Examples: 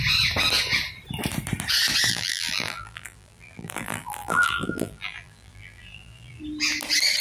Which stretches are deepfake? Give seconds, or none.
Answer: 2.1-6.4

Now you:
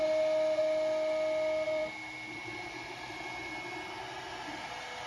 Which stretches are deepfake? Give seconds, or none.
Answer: none

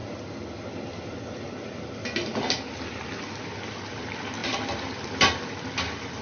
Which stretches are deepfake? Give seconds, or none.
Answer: 3.7-6.2